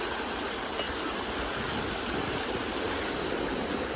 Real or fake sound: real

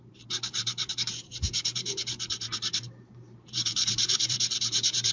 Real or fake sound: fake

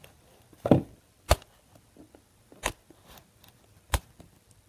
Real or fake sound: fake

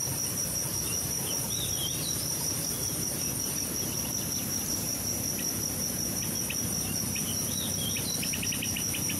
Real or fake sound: fake